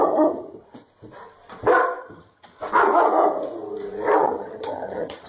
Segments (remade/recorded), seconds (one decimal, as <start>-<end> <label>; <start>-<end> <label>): 0.0-0.6 remade; 0.6-2.0 recorded; 2.0-2.6 remade; 2.6-4.2 recorded; 4.2-5.3 remade